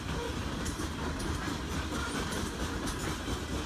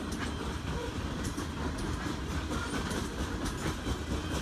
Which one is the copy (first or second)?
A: second